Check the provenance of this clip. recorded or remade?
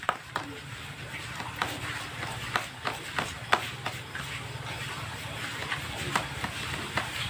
recorded